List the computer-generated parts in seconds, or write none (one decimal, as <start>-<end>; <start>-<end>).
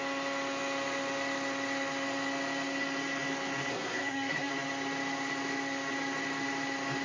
3.7-4.5